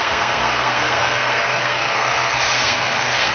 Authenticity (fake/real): fake